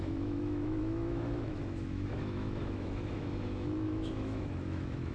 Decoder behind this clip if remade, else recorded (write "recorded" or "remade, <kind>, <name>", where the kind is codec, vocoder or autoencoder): remade, autoencoder, DAC-VAE